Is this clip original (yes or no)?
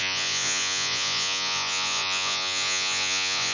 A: no